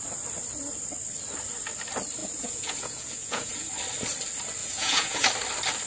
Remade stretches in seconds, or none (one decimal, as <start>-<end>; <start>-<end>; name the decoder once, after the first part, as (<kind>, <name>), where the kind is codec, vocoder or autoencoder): 2.2-3.7 (vocoder, Vocos); 4.6-5.3